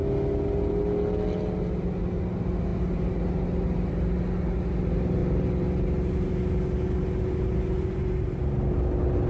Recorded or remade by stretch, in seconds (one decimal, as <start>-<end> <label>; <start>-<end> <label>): 0.0-9.3 recorded